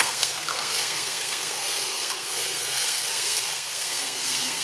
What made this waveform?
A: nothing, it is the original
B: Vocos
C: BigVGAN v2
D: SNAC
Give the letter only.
D